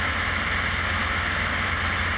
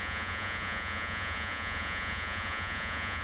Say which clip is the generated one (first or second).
second